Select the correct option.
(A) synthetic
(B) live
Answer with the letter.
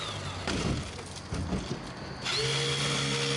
B